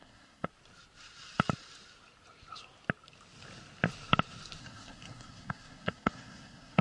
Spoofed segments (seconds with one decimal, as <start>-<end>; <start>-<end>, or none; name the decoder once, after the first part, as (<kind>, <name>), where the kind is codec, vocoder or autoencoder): 0.0-0.5 (codec, SNAC); 4.6-6.8